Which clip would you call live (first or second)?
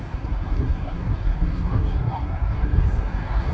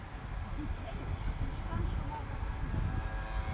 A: second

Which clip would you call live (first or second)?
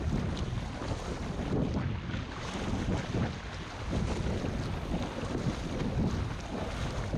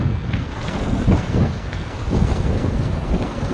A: first